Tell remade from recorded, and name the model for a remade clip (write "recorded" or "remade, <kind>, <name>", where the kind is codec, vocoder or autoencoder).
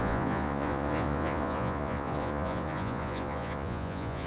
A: remade, vocoder, Vocos